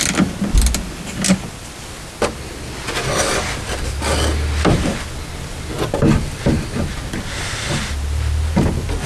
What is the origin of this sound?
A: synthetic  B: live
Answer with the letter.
B